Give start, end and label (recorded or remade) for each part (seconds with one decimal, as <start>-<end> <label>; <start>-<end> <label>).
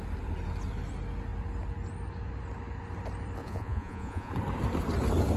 0.0-3.4 recorded; 3.4-4.3 remade; 4.3-5.4 recorded